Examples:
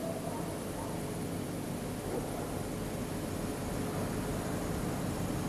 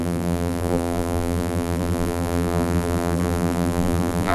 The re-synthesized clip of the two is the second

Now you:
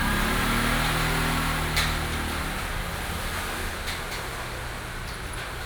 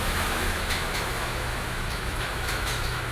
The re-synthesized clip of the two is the second